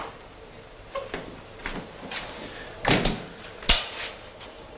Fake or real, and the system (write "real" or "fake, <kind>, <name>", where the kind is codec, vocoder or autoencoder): fake, vocoder, BigVGAN v2